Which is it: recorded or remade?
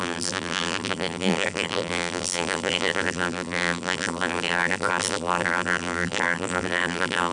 remade